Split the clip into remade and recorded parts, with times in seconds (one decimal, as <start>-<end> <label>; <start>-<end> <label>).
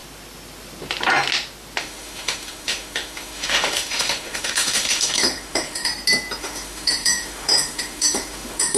0.0-1.8 recorded; 1.8-5.9 remade; 5.9-6.4 recorded; 6.4-8.8 remade